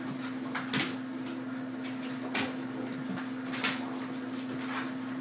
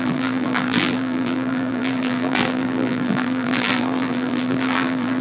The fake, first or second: second